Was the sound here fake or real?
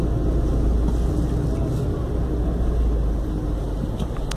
real